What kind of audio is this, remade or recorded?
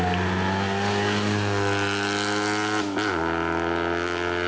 recorded